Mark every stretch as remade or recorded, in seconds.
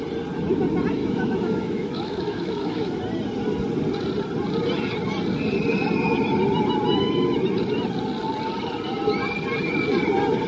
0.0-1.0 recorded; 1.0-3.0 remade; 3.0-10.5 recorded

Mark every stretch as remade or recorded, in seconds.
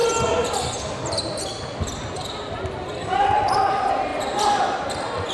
0.0-5.3 recorded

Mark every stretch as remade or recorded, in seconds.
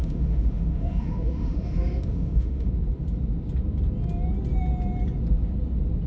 0.0-2.7 remade; 2.7-6.1 recorded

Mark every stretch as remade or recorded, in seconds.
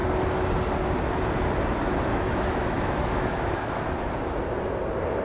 0.0-2.1 recorded; 2.1-3.8 remade; 3.8-5.2 recorded